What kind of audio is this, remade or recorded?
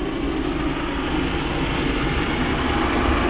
recorded